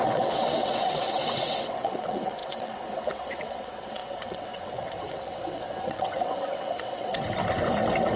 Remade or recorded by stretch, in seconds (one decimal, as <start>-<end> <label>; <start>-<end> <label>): 0.0-7.1 remade; 7.1-8.2 recorded